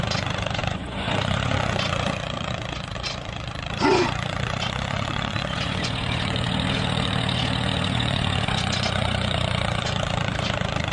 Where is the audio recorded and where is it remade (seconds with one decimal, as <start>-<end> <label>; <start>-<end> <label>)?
0.0-10.9 remade